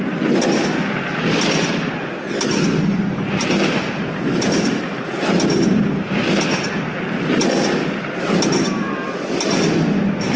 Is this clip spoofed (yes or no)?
no